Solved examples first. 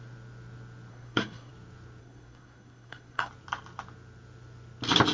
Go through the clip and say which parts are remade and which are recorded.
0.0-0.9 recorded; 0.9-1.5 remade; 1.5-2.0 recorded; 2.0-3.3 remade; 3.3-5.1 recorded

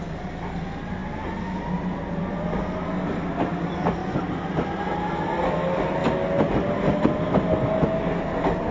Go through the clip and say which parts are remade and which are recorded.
0.0-8.7 recorded

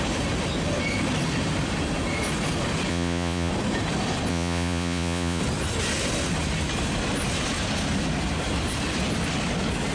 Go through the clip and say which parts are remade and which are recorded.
0.0-2.9 recorded; 2.9-3.5 remade; 3.5-4.3 recorded; 4.3-5.4 remade; 5.4-9.9 recorded

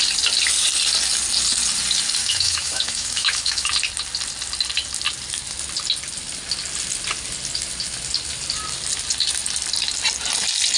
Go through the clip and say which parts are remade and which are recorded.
0.0-2.2 recorded; 2.2-3.7 remade; 3.7-10.8 recorded

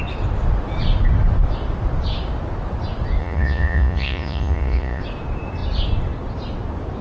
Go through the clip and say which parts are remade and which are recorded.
0.0-3.2 recorded; 3.2-5.0 remade; 5.0-7.0 recorded

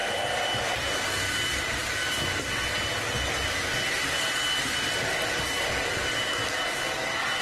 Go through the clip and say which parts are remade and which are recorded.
0.0-7.4 recorded

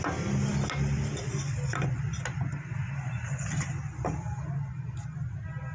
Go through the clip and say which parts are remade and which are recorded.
0.0-5.7 recorded

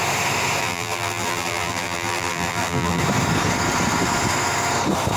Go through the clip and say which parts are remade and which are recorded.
0.0-0.6 recorded; 0.6-3.0 remade; 3.0-5.2 recorded